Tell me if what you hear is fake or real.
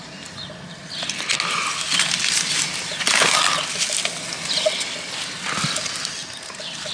real